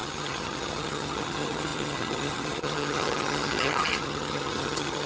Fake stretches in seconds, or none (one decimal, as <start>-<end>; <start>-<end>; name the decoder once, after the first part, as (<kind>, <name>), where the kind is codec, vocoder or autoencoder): 0.0-5.1 (vocoder, HiFi-GAN)